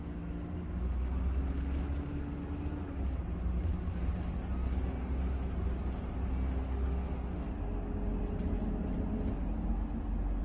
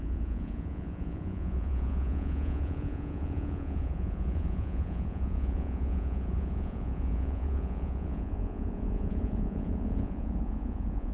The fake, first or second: second